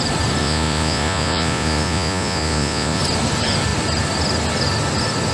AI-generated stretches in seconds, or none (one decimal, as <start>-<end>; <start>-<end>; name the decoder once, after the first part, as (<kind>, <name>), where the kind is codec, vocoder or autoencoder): 0.4-3.0 (vocoder, Vocos)